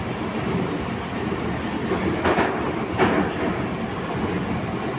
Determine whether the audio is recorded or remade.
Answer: recorded